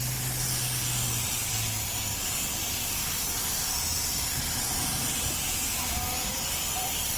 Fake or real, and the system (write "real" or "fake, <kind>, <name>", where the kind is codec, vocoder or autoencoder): real